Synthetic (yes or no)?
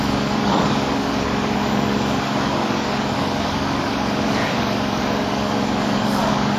yes